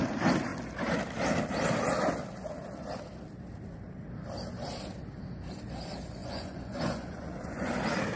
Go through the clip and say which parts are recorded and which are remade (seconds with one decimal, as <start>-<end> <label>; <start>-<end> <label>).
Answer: 0.0-6.2 recorded; 6.2-7.7 remade; 7.7-8.2 recorded